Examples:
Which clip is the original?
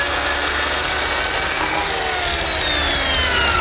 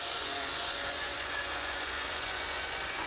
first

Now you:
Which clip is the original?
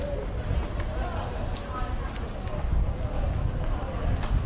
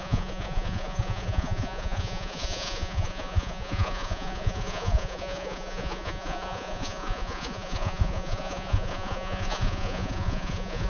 first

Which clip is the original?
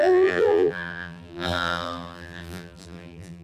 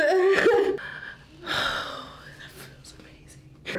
second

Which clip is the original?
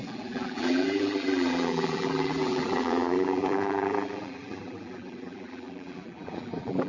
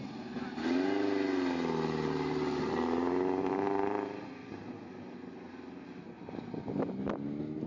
second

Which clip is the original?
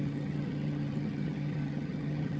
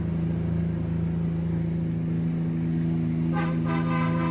second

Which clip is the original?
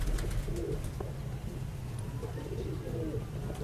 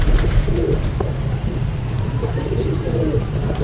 first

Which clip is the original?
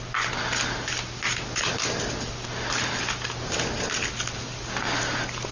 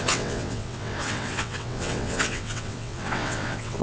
first